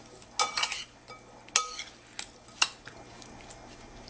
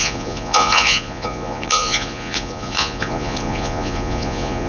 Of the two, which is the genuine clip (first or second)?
first